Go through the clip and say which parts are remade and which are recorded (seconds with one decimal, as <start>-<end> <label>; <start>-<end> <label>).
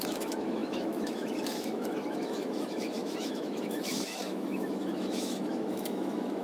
0.0-6.4 remade